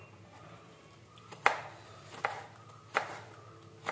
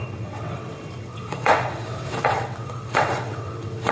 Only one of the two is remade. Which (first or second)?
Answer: second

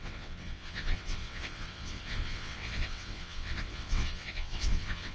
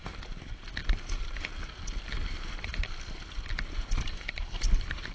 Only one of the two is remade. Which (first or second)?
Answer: first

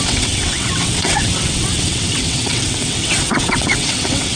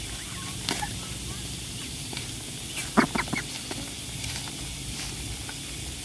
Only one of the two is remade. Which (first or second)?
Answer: first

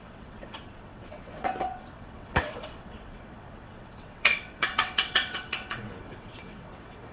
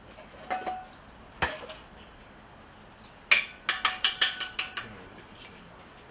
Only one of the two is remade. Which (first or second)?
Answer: first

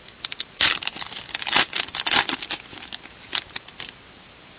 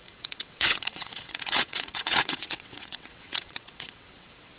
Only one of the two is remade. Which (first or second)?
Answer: second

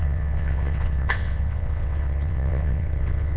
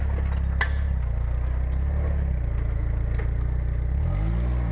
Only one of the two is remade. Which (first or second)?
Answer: first